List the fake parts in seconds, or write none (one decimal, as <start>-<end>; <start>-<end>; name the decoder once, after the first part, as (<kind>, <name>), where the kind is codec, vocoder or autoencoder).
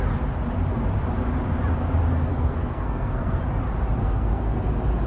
2.3-3.4 (codec, SNAC); 4.0-4.6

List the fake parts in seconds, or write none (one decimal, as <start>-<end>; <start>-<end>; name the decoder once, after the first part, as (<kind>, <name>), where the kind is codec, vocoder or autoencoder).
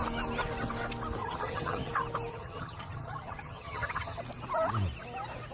1.2-1.9 (vocoder, HiFi-GAN); 2.3-4.2